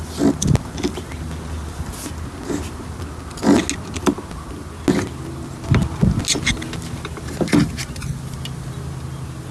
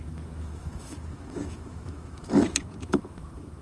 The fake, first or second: second